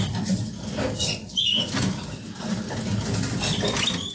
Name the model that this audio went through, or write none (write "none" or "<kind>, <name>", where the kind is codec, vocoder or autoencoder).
none